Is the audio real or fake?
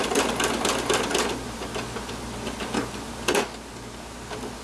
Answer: real